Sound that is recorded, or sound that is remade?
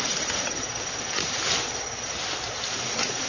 recorded